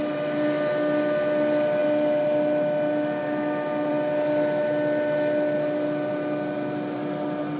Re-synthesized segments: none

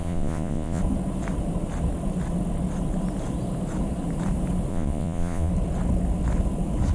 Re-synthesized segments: 0.0-0.8 (vocoder, Vocos); 4.7-5.5

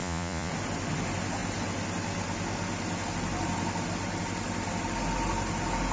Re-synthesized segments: 0.0-0.5 (vocoder, Vocos)

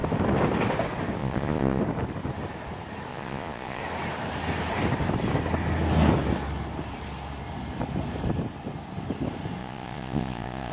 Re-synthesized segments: 1.2-1.8 (vocoder, Vocos); 3.1-3.8; 9.6-10.7